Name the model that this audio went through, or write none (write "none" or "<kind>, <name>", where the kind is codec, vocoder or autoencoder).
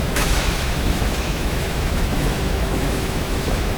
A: autoencoder, DAC-VAE